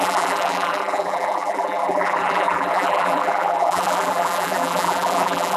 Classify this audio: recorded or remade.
remade